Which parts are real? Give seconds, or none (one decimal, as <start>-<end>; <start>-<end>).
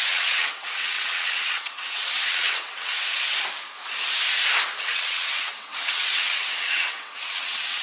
2.9-4.8